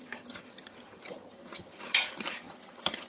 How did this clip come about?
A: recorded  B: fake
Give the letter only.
B